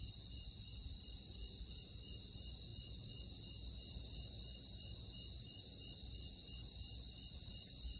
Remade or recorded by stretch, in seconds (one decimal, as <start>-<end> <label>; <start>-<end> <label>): 0.0-8.0 recorded